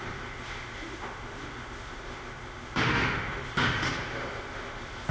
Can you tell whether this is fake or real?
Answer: fake